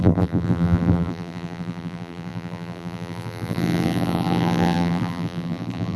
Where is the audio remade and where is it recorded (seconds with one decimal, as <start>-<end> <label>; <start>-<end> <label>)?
0.0-6.0 remade